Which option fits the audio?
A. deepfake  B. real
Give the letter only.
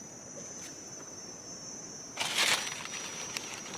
B